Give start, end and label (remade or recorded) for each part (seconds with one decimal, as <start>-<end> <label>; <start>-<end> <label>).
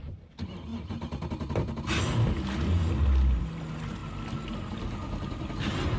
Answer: 0.0-6.0 recorded